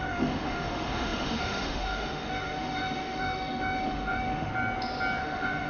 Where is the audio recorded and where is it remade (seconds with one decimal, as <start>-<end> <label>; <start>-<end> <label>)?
0.0-4.5 remade; 4.5-5.2 recorded; 5.2-5.7 remade